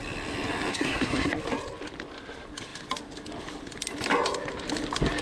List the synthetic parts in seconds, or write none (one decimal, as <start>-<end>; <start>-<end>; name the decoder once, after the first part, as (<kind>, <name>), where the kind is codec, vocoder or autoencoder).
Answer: 0.7-1.3 (codec, SNAC)